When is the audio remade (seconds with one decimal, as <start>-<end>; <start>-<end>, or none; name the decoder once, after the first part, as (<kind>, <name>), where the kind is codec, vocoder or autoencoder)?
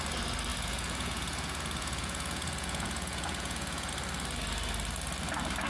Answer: 0.5-3.9 (vocoder, Vocos)